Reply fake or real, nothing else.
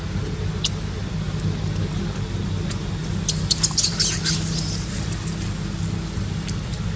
real